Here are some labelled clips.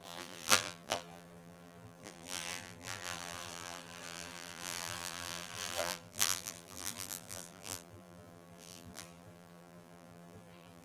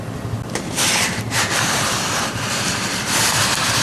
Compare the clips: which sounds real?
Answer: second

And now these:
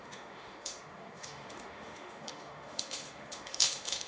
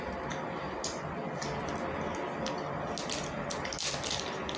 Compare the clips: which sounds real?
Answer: second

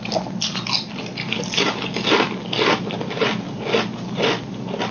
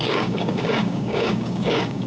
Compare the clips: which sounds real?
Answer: first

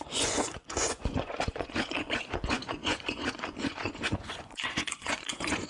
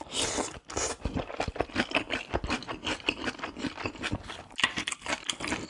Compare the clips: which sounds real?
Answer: second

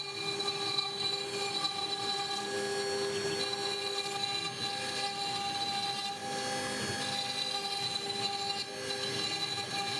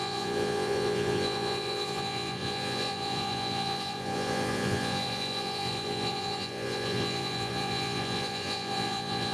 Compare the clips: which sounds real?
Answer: first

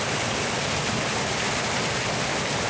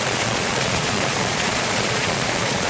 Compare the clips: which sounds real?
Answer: first